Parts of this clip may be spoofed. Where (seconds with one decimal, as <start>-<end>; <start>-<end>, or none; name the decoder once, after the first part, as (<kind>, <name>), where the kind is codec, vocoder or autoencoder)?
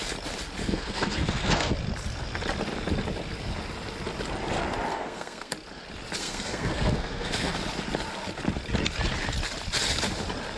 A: 0.6-1.7 (codec, SNAC); 4.9-5.5; 6.2-7.5